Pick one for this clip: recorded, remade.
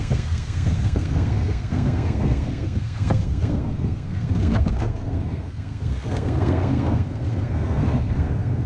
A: remade